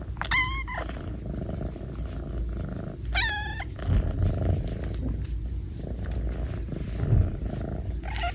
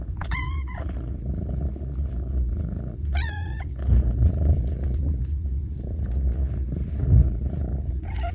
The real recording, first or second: first